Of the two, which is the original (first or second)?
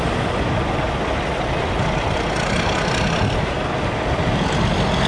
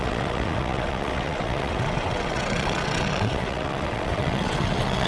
first